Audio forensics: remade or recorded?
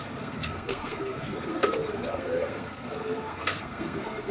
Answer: remade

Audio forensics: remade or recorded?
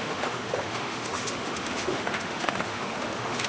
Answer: remade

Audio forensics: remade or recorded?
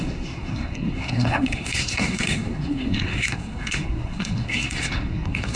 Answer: remade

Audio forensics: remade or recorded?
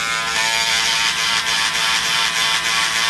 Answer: remade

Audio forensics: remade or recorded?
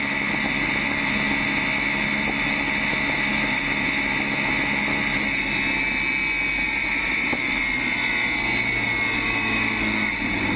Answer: recorded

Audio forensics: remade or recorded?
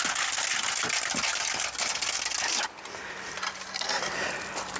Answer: recorded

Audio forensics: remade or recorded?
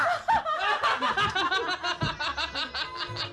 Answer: recorded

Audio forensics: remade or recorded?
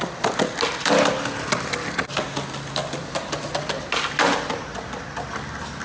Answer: recorded